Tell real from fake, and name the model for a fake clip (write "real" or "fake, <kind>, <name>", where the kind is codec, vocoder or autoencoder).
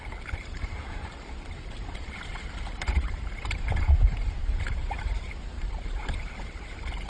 fake, vocoder, BigVGAN v2